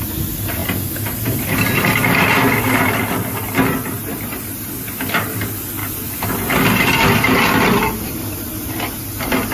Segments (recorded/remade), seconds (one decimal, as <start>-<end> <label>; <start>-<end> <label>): 0.0-9.5 recorded